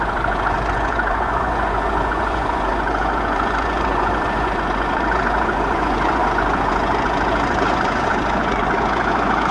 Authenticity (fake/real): fake